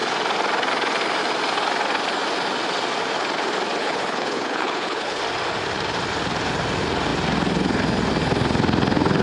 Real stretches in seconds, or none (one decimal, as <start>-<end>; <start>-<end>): 0.0-3.8; 5.2-9.2